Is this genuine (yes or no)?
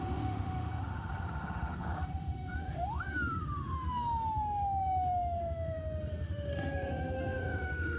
no